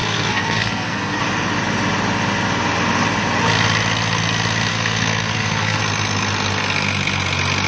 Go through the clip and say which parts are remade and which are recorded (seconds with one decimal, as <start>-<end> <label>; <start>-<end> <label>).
0.0-1.2 remade; 1.2-4.7 recorded; 4.7-5.8 remade; 5.8-7.7 recorded